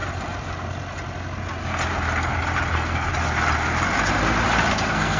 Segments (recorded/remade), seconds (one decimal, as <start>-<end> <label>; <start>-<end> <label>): 0.0-2.7 recorded; 2.7-3.1 remade; 3.1-4.7 recorded; 4.7-5.2 remade